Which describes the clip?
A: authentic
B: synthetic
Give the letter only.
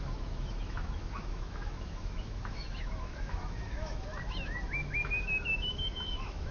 B